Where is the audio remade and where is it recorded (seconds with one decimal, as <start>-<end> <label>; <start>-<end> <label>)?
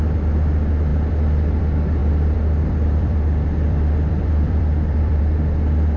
0.0-0.9 recorded; 0.9-1.6 remade; 1.6-2.0 recorded; 2.0-5.2 remade; 5.2-6.0 recorded